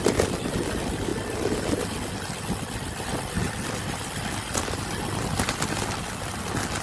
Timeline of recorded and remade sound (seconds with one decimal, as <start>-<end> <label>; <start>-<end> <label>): 0.0-6.8 recorded